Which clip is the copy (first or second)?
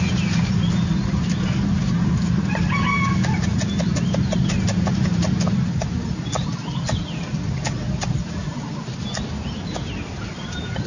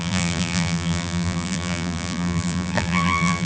second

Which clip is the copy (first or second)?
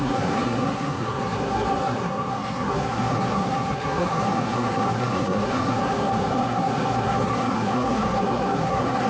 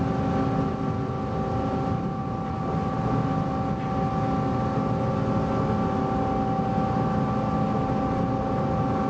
first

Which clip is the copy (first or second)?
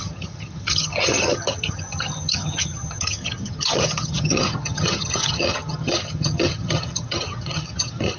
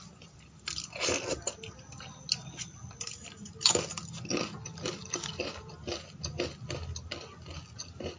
first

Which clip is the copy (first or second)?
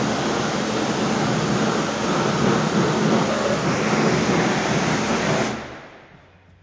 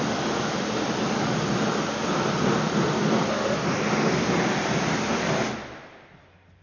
second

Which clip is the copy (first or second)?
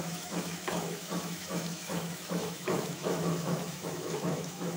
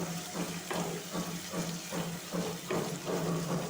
first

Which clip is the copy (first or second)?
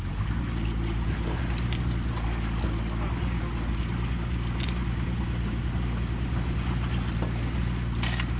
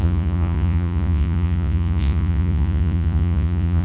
second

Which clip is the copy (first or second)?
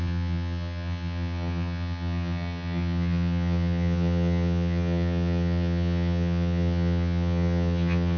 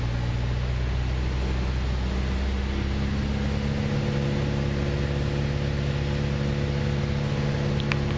first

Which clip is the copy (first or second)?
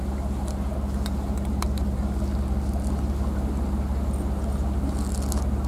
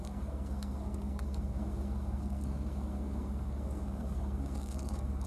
second